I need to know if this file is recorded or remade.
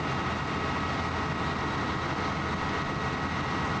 recorded